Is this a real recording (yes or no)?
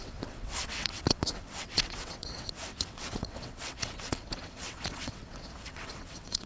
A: no